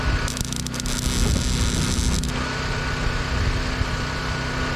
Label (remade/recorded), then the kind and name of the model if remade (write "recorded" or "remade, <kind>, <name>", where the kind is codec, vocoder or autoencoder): recorded